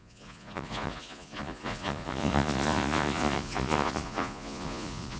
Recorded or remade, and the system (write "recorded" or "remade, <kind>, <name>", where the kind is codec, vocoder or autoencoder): remade, vocoder, Vocos